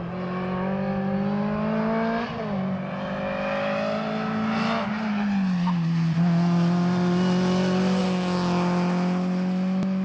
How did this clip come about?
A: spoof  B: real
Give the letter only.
B